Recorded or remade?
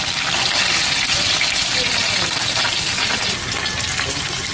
recorded